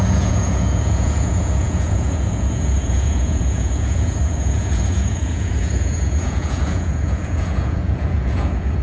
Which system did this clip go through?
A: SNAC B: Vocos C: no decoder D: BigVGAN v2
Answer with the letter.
B